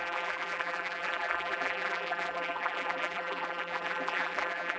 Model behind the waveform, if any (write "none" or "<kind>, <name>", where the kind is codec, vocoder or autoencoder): vocoder, BigVGAN v2